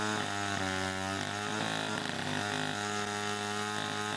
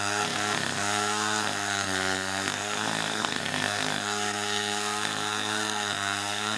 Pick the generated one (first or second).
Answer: second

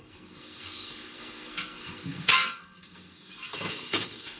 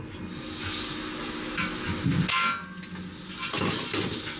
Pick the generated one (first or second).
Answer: first